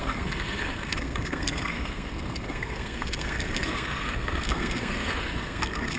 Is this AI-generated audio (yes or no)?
yes